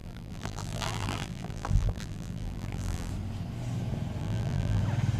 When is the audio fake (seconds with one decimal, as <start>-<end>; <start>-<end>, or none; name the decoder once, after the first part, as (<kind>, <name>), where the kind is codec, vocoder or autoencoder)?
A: 0.0-3.1 (vocoder, BigVGAN v2); 4.2-4.8